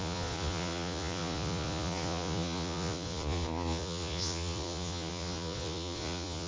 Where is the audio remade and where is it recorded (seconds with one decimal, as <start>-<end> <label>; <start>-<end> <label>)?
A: 0.0-6.5 remade